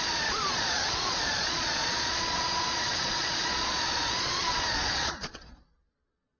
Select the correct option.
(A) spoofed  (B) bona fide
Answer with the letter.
A